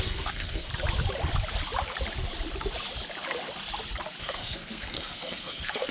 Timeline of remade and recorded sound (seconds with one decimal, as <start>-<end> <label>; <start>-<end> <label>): 0.0-0.7 remade; 0.7-4.2 recorded; 4.2-5.9 remade